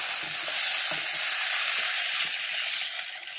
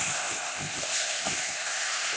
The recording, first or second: first